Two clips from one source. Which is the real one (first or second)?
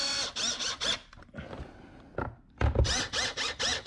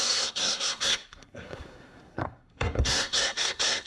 first